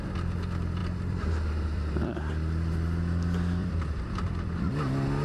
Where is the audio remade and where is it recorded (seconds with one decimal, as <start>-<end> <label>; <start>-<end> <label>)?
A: 0.0-0.8 recorded; 0.8-2.3 remade; 2.3-3.6 recorded; 3.6-4.7 remade; 4.7-5.2 recorded